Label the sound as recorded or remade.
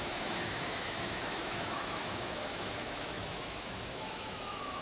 remade